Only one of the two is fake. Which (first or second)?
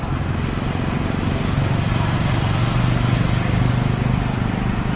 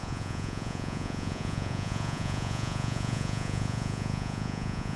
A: second